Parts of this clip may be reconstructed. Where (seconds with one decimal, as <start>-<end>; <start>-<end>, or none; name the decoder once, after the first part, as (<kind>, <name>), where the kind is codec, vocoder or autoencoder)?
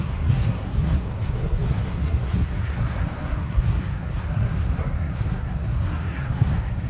0.0-6.9 (codec, SNAC)